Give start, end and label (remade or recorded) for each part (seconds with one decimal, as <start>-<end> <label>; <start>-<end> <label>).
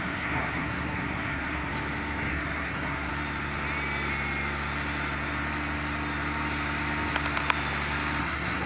0.0-1.7 remade; 1.7-2.3 recorded; 2.3-3.1 remade; 3.1-8.2 recorded; 8.2-8.7 remade